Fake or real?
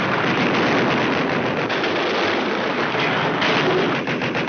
fake